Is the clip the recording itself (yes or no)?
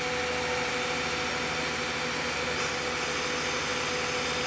yes